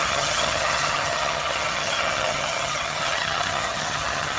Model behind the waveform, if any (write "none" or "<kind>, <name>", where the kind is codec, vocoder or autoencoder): vocoder, HiFi-GAN